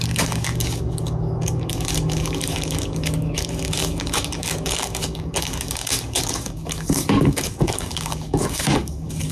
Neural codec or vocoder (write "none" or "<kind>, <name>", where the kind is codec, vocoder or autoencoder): codec, DAC